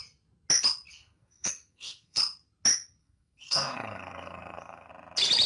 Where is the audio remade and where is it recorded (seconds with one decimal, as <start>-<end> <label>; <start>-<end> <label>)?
0.0-0.9 recorded; 0.9-2.2 remade; 2.2-3.0 recorded; 3.0-4.9 remade; 4.9-5.5 recorded